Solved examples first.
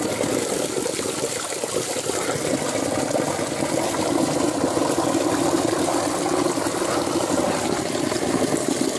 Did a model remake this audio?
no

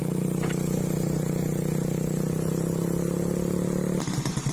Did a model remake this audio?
no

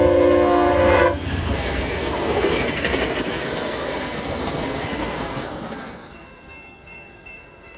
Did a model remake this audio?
yes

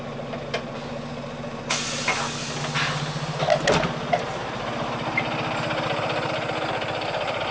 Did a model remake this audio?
no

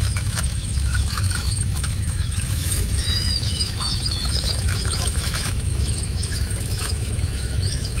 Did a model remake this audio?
yes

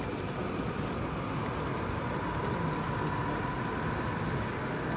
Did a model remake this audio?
no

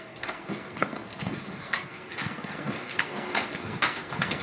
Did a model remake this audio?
yes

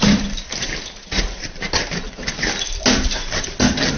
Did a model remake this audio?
no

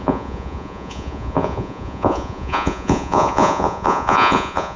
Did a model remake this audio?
yes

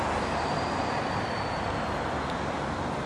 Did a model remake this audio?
no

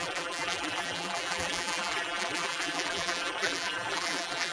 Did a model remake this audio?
yes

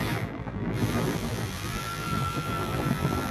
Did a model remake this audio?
yes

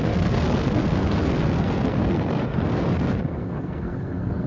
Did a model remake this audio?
yes